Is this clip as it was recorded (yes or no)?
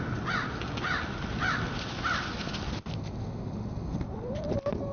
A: yes